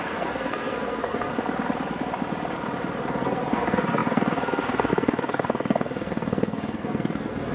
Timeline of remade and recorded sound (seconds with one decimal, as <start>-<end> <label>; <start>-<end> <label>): 0.0-1.3 remade; 1.3-3.2 recorded; 3.2-7.5 remade